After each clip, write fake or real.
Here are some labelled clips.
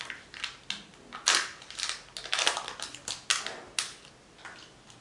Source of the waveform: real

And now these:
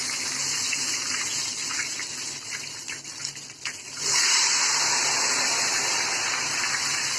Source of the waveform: real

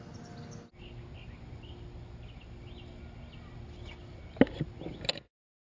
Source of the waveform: real